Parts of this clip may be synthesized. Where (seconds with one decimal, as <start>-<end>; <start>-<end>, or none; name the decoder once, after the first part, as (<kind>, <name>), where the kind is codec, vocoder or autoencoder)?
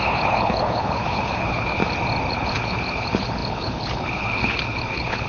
0.0-1.8 (codec, HILCodec); 2.3-5.3